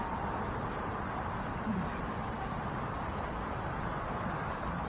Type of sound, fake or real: fake